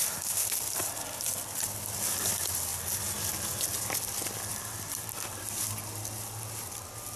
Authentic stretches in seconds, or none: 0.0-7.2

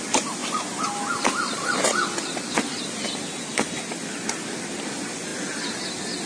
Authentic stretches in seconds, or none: 0.0-6.3